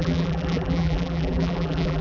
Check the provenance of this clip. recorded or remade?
remade